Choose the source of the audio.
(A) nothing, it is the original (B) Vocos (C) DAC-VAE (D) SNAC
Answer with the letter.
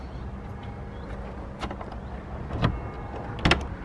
A